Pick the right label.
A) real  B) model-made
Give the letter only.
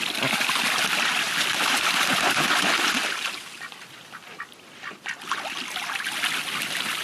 A